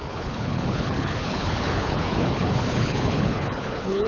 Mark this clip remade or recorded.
remade